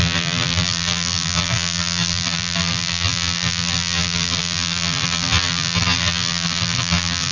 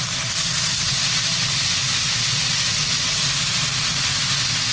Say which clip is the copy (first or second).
first